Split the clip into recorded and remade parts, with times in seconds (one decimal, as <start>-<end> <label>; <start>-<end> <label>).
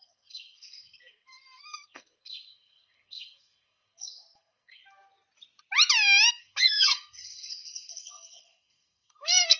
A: 0.0-4.8 remade; 4.8-6.3 recorded; 6.3-9.6 remade